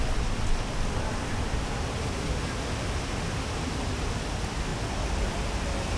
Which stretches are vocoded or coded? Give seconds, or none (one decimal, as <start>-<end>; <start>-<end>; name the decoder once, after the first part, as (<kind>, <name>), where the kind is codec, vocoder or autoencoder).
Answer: none